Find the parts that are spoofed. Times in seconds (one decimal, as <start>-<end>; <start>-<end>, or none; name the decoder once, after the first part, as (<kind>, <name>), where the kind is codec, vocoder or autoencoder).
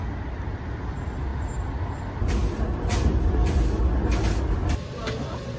none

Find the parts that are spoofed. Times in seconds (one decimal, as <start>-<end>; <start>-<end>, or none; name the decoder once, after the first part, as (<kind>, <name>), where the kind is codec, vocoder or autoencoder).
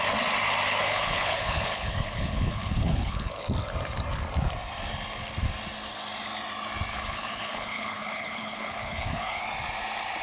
0.8-3.4 (codec, HILCodec); 6.9-9.4